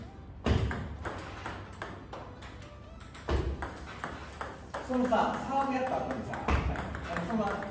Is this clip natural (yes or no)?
yes